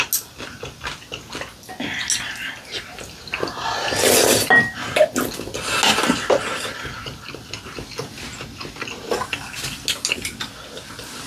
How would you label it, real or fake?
real